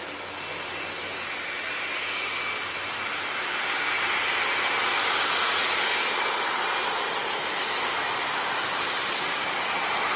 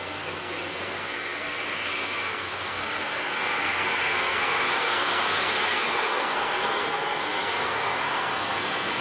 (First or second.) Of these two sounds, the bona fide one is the first